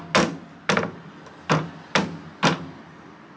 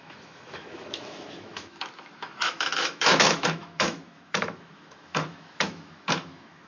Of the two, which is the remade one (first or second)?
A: second